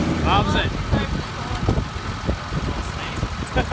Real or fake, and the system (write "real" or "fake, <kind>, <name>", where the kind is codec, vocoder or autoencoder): real